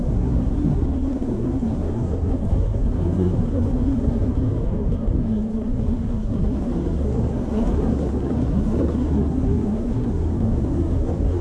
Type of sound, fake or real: fake